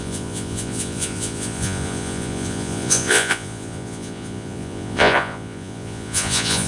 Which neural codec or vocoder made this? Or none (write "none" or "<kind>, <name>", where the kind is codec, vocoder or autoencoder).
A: vocoder, Vocos